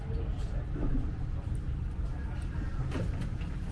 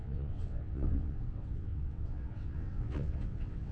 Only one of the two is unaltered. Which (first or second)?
first